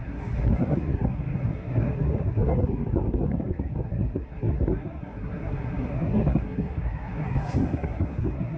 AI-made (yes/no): yes